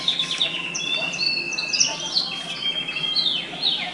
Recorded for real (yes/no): yes